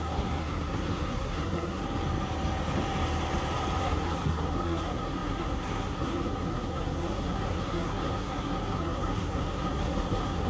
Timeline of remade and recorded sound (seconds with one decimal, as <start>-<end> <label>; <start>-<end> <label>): 0.0-1.8 remade; 1.8-3.8 recorded; 3.8-10.5 remade